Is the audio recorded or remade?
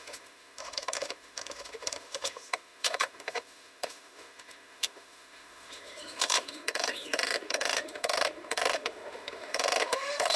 remade